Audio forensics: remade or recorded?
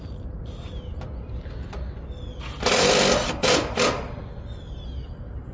recorded